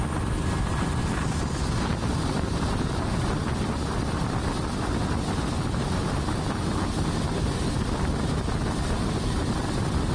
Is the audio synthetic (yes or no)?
no